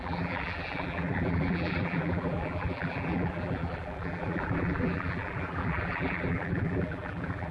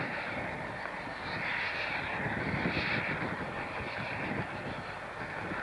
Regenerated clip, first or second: first